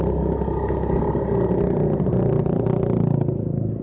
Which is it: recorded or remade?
recorded